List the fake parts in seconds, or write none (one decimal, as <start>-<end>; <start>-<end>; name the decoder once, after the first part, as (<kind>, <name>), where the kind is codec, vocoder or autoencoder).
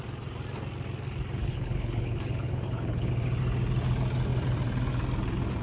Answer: 1.4-3.1 (codec, HILCodec)